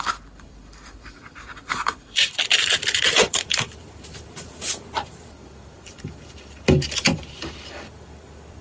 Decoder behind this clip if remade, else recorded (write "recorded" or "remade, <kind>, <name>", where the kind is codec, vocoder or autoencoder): remade, vocoder, BigVGAN v2